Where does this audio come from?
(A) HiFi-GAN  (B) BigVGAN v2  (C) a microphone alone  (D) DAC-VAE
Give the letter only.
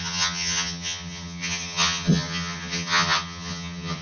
A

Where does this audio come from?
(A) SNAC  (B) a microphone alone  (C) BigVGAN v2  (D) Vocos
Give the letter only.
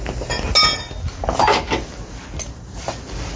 B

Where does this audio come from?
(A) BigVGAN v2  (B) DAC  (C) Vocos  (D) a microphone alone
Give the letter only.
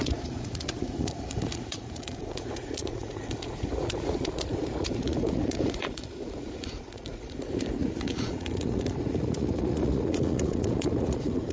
C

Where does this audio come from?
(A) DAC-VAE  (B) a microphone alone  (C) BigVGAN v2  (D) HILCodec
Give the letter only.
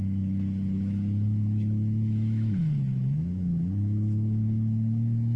A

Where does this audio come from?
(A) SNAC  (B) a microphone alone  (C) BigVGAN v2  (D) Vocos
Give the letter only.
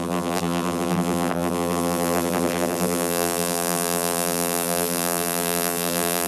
C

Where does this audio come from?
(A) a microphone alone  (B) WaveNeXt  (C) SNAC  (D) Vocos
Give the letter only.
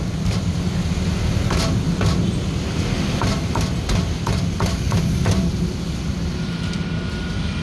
A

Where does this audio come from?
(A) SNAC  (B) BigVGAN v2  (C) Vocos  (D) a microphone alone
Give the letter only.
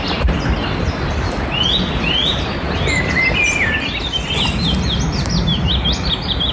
B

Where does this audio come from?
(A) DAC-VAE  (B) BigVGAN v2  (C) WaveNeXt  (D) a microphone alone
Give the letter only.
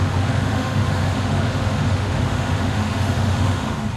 A